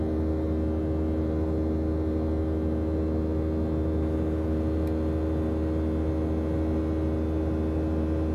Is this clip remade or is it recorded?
recorded